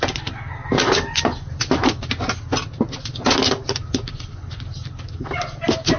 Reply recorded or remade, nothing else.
recorded